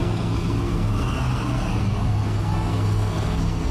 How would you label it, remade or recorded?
remade